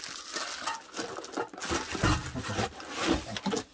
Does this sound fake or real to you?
real